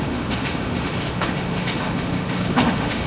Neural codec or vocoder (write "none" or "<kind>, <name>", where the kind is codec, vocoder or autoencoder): autoencoder, DAC-VAE